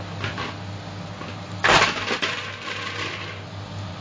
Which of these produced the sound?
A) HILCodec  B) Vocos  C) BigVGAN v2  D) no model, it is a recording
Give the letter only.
D